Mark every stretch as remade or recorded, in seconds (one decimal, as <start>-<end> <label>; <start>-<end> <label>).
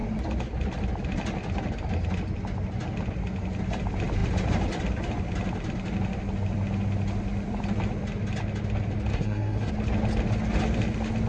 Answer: 0.0-9.1 recorded; 9.1-9.7 remade; 9.7-11.3 recorded